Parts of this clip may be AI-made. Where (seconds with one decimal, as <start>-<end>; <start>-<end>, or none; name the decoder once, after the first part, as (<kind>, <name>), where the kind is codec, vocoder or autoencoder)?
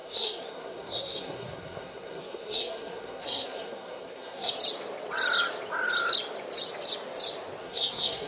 0.0-4.5 (codec, SNAC); 7.6-8.3